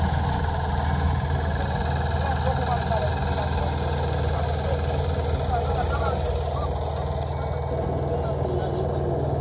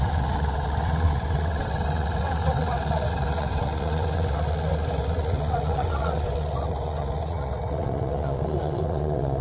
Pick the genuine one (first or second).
first